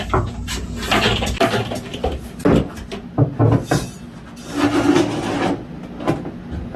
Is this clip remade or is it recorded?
recorded